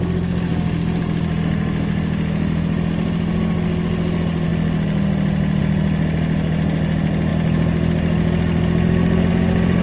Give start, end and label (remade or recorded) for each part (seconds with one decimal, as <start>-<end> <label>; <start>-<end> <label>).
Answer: 0.0-9.8 recorded